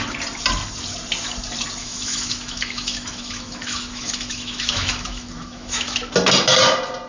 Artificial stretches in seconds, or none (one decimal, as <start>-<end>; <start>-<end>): 1.8-6.1